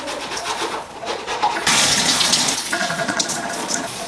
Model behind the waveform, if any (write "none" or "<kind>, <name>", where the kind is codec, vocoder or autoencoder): vocoder, Vocos